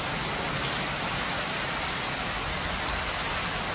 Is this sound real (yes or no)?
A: yes